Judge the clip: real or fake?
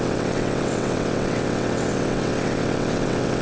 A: fake